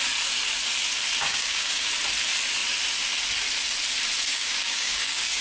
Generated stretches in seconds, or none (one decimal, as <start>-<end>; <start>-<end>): 1.3-1.9; 4.3-5.4